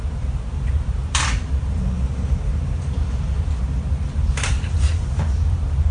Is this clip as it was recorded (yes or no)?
no